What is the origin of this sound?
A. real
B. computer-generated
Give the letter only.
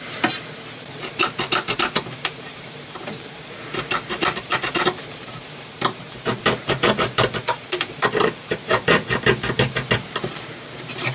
B